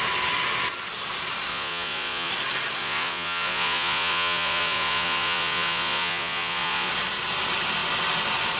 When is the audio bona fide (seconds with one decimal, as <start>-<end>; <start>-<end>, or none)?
0.0-1.5; 2.3-2.8; 6.9-8.6